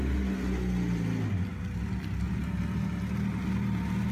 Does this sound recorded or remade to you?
recorded